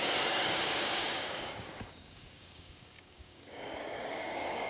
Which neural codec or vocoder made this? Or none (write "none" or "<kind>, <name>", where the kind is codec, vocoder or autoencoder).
codec, DAC